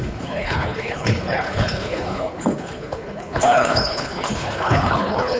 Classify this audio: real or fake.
fake